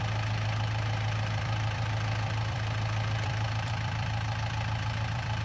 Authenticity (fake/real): fake